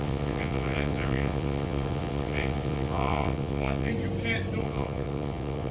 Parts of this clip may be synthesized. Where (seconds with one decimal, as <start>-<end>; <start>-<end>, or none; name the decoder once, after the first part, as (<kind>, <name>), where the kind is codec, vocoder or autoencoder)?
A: 0.0-3.9 (vocoder, WaveNeXt); 4.6-5.7